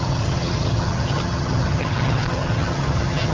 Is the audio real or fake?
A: fake